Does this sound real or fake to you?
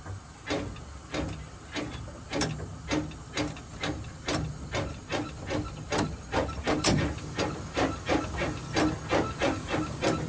real